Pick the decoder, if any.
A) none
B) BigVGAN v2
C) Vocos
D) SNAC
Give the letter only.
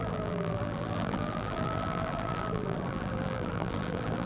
B